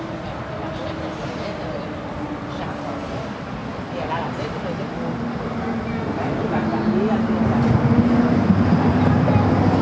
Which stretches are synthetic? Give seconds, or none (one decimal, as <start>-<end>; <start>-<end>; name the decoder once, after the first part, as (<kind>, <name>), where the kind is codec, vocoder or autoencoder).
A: none